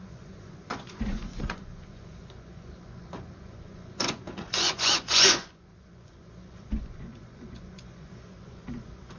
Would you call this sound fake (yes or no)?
yes